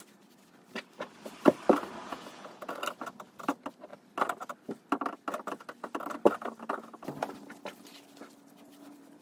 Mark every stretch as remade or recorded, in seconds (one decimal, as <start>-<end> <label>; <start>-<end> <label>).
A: 0.0-2.0 recorded; 2.0-2.8 remade; 2.8-9.2 recorded

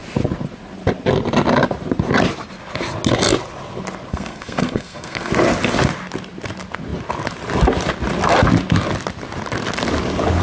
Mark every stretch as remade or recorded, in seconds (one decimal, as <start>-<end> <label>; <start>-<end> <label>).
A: 0.0-4.1 recorded; 4.1-5.3 remade; 5.3-10.4 recorded

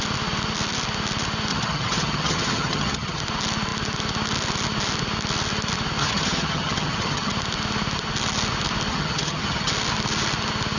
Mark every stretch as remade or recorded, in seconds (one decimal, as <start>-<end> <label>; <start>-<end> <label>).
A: 0.0-1.5 recorded; 1.5-3.2 remade; 3.2-6.0 recorded; 6.0-7.3 remade; 7.3-8.9 recorded; 8.9-9.7 remade; 9.7-10.8 recorded

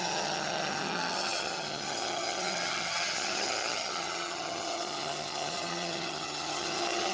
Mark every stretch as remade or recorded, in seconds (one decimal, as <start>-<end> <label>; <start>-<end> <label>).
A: 0.0-7.1 remade